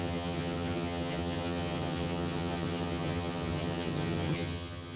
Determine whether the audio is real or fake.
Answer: fake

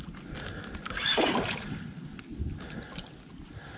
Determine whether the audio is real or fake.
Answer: real